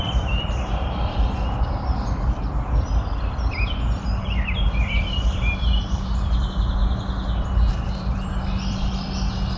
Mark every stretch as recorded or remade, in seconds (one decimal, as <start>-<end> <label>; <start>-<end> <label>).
0.0-6.8 remade; 6.8-7.7 recorded; 7.7-9.6 remade